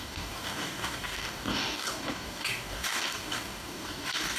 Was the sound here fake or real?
fake